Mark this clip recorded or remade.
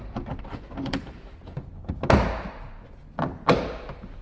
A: recorded